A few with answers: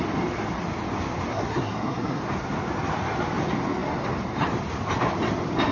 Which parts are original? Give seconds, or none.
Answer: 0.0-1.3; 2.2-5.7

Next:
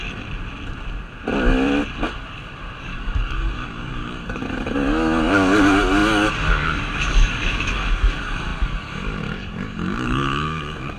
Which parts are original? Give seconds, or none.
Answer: 0.0-2.8

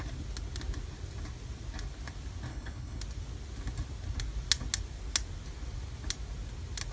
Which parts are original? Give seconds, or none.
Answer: 0.0-2.5; 3.0-6.9

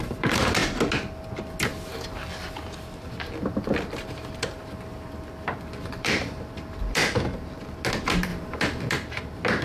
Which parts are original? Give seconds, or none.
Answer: 0.6-5.8; 7.0-7.9; 8.3-8.9

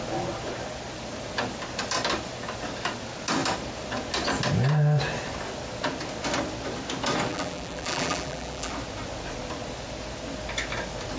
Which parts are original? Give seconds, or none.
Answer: 0.0-7.3; 8.7-11.2

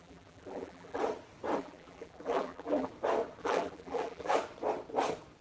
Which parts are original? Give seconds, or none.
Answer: 1.0-1.6; 2.9-3.4; 4.3-5.4

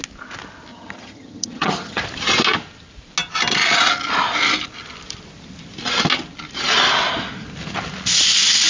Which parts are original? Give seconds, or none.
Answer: 0.0-0.7; 2.0-8.7